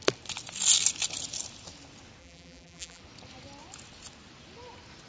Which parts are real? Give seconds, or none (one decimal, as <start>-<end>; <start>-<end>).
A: 0.0-2.2; 3.0-5.1